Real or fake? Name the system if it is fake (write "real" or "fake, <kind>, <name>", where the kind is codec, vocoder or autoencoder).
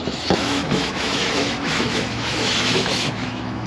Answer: fake, autoencoder, DAC-VAE